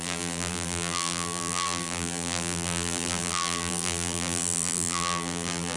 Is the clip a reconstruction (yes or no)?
yes